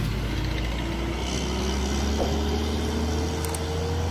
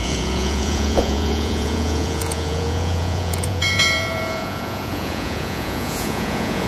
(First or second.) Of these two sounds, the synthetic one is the second